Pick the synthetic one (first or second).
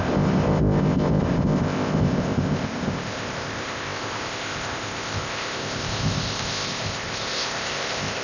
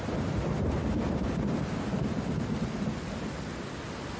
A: first